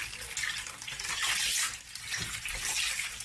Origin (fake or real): real